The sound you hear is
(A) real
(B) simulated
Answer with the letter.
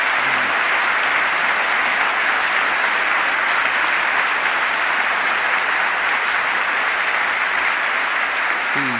A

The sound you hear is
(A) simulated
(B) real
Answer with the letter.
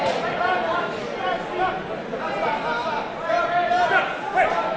B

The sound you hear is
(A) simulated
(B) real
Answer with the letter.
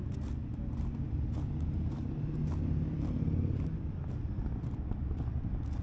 B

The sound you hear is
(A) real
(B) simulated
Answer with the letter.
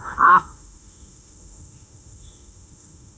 B